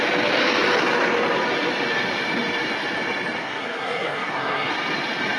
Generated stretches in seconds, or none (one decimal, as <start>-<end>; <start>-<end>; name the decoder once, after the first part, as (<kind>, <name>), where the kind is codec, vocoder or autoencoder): 3.4-4.7 (codec, SNAC)